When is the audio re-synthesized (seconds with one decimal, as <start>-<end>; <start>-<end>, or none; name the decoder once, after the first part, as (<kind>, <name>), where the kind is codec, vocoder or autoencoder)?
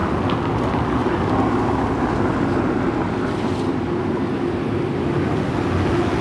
none